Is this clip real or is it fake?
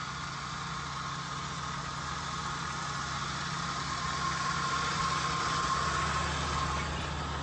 real